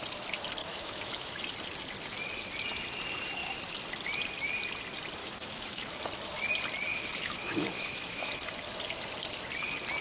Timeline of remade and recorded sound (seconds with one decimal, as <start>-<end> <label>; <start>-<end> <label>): 0.0-0.6 recorded; 0.6-1.4 remade; 1.4-5.2 recorded; 5.2-6.0 remade; 6.0-6.9 recorded; 6.9-8.3 remade; 8.3-10.0 recorded